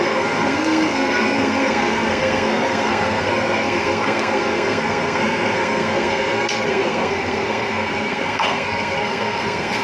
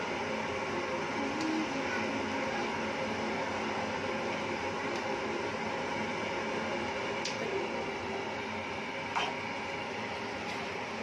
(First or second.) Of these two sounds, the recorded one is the second